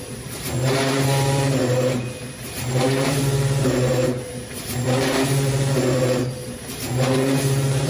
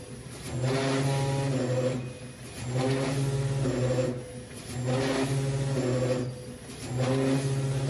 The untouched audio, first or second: second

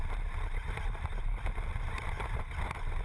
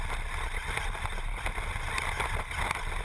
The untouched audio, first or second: second